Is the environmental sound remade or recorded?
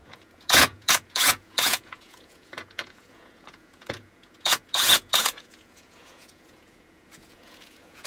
remade